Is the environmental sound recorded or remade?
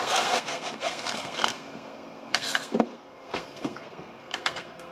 remade